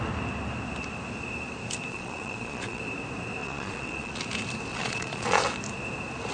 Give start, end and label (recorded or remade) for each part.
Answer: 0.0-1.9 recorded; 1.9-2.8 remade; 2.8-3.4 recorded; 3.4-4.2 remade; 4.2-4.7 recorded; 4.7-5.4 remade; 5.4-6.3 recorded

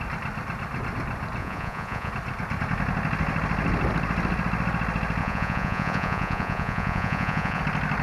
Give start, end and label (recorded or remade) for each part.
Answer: 0.0-1.4 recorded; 1.4-2.1 remade; 2.1-5.2 recorded; 5.2-7.6 remade; 7.6-8.0 recorded

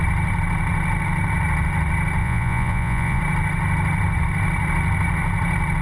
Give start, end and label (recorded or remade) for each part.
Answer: 0.0-2.2 recorded; 2.2-3.2 remade; 3.2-5.8 recorded